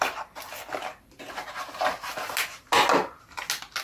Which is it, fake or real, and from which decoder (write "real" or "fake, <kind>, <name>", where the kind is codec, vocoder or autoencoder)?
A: real